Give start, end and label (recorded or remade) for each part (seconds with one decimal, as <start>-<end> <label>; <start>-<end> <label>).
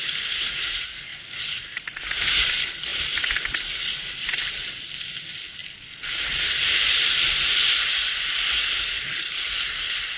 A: 0.0-10.2 recorded